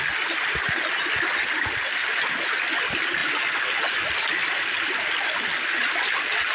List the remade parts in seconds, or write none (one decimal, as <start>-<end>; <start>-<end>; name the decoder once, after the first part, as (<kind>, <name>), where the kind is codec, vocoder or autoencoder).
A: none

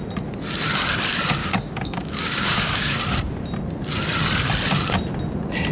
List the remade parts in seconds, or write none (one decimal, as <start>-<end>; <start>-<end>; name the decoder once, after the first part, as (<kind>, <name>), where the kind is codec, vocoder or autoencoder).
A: 1.4-3.0 (codec, DAC)

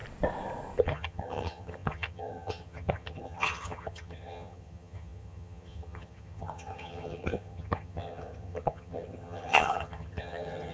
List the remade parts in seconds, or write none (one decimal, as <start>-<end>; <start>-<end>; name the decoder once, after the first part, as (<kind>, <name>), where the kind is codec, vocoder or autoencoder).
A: 0.8-10.7 (vocoder, HiFi-GAN)

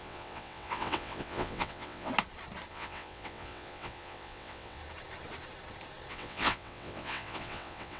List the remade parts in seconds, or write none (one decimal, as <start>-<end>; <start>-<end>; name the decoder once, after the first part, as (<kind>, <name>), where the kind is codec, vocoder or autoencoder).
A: 0.0-2.1 (vocoder, WaveNeXt); 2.7-4.8; 6.1-8.0

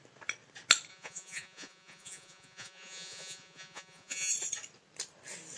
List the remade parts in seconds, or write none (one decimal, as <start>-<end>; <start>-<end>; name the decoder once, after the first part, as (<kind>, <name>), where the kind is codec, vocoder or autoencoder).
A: 0.9-4.3 (vocoder, Vocos)